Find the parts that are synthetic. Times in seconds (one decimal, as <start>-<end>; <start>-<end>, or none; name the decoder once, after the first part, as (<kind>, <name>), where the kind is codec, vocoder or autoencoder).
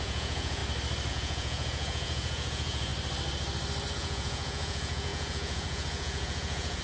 0.0-0.6 (vocoder, Vocos); 1.1-2.9; 3.9-6.8